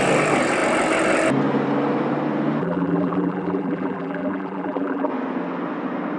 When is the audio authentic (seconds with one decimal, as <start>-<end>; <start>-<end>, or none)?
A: 0.0-2.6; 5.1-6.2